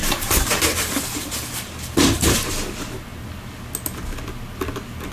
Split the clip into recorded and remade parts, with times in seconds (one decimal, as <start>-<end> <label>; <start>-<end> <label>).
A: 0.0-2.3 remade; 2.3-5.1 recorded